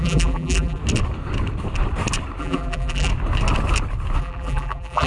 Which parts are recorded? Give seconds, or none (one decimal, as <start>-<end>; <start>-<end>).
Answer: 0.8-2.4; 3.1-4.2